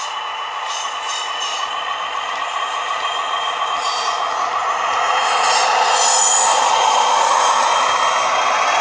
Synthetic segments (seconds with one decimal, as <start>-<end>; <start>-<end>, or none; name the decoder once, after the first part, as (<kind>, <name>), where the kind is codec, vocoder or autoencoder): 0.5-1.0 (vocoder, Vocos); 1.5-2.3; 6.5-7.7

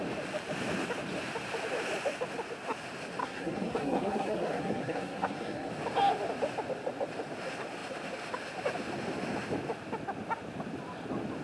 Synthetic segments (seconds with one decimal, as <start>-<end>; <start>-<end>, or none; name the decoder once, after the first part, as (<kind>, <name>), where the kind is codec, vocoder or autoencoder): 3.2-5.7 (codec, SNAC)

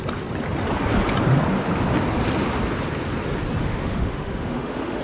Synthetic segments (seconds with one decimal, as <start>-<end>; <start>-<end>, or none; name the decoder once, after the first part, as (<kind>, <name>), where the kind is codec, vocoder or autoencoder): 3.6-5.0 (autoencoder, DAC-VAE)

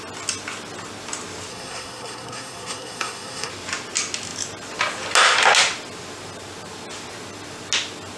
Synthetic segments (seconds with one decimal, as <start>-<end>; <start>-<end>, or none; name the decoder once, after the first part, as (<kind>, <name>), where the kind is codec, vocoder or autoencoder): 1.5-3.5 (codec, SNAC)

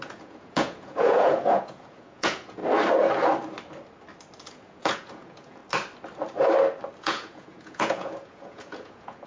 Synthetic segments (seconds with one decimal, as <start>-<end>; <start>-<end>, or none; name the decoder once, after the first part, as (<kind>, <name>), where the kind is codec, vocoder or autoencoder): 0.0-2.6 (vocoder, Vocos); 4.5-5.6; 7.0-9.3

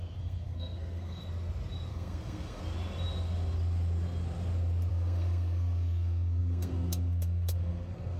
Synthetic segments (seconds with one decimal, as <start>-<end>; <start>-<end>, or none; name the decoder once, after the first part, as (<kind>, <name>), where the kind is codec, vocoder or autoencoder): 0.0-1.2 (codec, SNAC); 1.9-2.6; 4.9-8.2